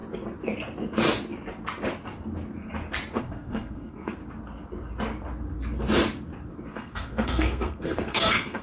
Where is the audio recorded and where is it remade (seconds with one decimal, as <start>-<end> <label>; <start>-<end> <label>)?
0.0-3.2 recorded; 3.2-4.2 remade; 4.2-6.7 recorded; 6.7-8.6 remade